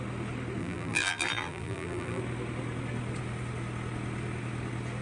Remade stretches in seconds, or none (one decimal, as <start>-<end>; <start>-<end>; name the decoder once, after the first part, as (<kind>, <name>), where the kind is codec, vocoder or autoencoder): 0.6-2.2 (vocoder, BigVGAN v2)